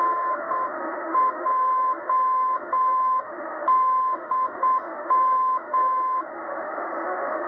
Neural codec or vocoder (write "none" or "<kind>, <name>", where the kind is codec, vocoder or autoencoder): autoencoder, DAC-VAE